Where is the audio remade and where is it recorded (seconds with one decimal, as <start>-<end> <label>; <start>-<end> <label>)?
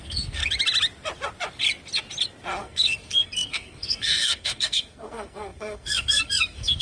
0.0-0.4 remade; 0.4-2.6 recorded; 2.6-6.8 remade